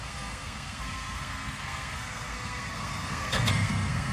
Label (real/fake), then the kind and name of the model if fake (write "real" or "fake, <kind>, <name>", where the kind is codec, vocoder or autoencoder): fake, codec, SNAC